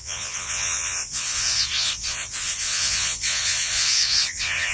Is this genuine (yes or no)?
no